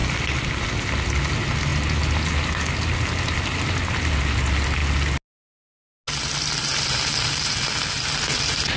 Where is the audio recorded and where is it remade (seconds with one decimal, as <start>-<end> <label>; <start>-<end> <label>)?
0.0-8.8 recorded